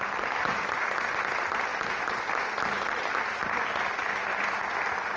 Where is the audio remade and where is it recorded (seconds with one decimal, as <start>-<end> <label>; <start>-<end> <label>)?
0.0-5.2 recorded

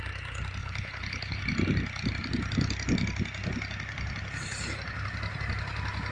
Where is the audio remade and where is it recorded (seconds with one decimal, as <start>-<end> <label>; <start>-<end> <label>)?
0.0-0.6 recorded; 0.6-1.4 remade; 1.4-6.1 recorded